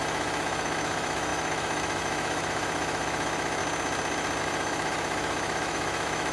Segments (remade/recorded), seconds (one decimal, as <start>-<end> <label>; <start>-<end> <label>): 0.0-3.6 remade; 3.6-4.4 recorded; 4.4-6.3 remade